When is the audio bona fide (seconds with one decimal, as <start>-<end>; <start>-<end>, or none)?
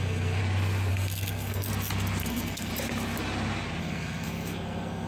0.4-0.9; 1.7-2.2; 2.7-3.8